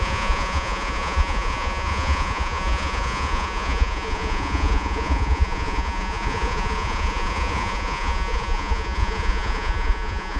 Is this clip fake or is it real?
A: fake